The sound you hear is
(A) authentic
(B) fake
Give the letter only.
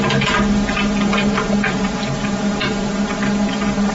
A